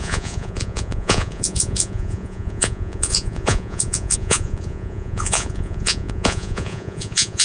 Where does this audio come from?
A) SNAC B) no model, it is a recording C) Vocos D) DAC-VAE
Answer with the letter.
C